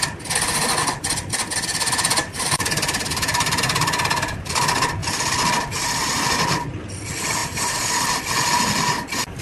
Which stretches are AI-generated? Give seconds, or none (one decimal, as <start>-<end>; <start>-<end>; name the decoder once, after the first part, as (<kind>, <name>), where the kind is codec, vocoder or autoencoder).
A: 1.7-3.6 (vocoder, BigVGAN v2); 5.0-6.4; 7.4-8.2